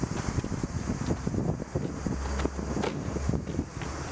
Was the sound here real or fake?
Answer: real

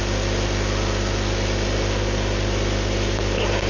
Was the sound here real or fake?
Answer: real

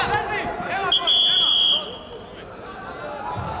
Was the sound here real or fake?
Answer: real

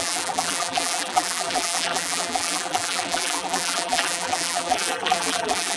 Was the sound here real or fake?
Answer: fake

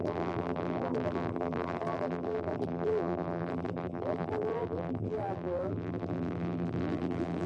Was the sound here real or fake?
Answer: fake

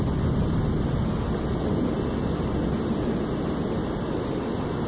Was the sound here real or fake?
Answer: real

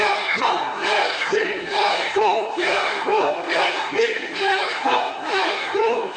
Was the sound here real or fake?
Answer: fake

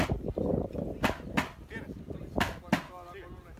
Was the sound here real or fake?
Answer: real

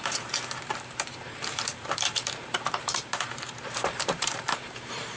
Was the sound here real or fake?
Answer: fake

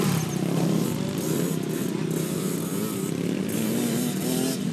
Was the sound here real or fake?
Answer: real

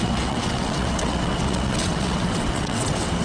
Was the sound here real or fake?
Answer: fake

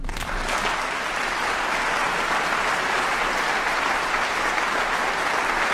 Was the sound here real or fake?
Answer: real